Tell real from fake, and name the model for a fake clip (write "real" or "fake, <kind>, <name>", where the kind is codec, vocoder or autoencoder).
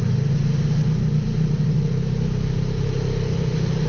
real